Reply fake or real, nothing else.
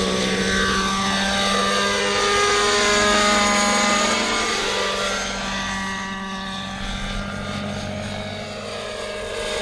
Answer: real